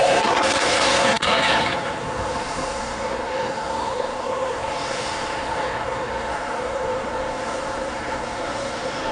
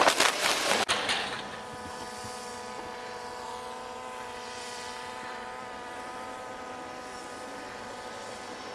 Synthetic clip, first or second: first